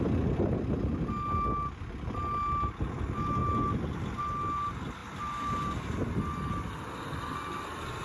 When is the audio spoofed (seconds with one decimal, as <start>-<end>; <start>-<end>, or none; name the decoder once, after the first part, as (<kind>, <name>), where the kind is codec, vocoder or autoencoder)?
none